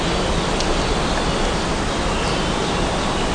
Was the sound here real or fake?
real